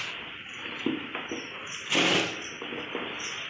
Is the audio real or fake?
real